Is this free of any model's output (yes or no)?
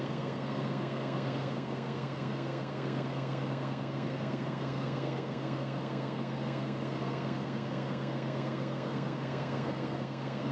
no